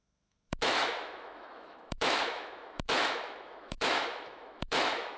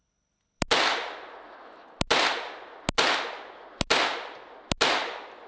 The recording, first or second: second